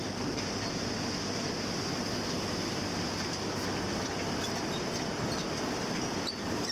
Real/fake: real